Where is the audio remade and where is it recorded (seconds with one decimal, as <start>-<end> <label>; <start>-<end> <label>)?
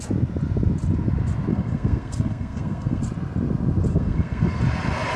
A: 0.0-1.5 recorded; 1.5-3.0 remade; 3.0-3.9 recorded; 3.9-4.6 remade; 4.6-5.2 recorded